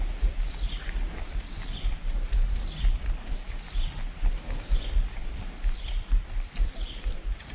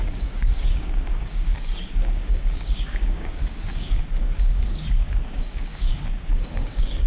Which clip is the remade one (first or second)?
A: second